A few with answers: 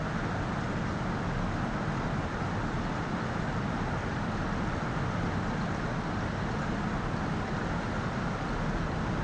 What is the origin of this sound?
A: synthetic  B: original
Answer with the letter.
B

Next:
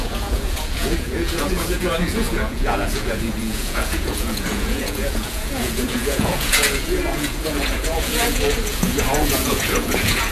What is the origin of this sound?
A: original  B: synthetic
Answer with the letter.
B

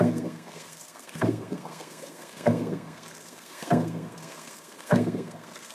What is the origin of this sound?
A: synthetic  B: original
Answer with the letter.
A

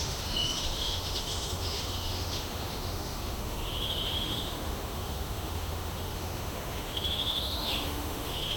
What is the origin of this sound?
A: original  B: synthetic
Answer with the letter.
B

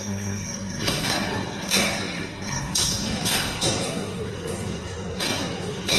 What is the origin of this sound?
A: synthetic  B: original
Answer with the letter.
A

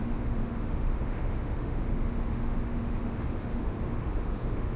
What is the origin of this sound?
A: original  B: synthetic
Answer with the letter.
B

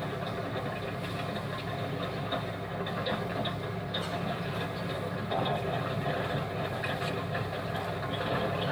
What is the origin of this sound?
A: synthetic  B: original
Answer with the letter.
B